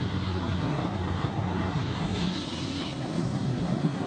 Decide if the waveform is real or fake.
fake